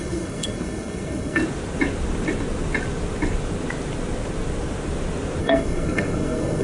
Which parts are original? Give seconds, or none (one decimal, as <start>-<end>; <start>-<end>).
1.4-5.4

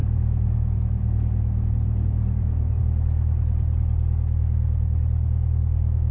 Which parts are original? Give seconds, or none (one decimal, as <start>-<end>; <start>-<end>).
2.8-6.1

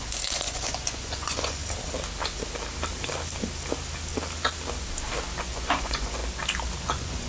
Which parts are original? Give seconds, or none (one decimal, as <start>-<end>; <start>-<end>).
1.6-5.4; 6.2-6.8

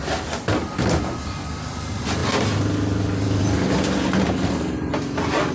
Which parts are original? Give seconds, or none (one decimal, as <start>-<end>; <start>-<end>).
0.0-5.5

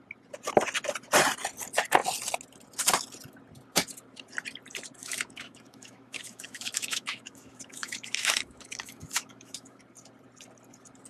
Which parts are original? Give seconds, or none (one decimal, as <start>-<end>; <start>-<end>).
0.0-5.0; 9.8-11.1

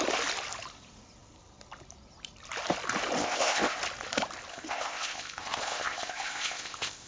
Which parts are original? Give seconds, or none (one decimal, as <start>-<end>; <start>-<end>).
0.0-3.2; 3.8-4.5

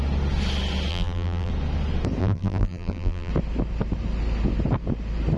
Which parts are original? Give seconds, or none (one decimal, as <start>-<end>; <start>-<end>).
0.0-0.9; 1.5-2.2; 3.3-5.4

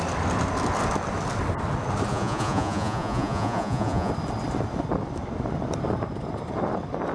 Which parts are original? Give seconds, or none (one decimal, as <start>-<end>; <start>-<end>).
0.0-2.1; 4.1-7.1